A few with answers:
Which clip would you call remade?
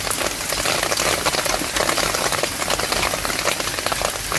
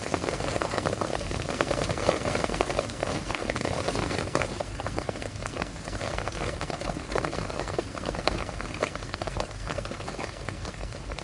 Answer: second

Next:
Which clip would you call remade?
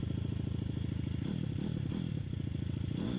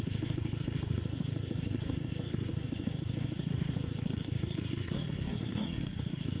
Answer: second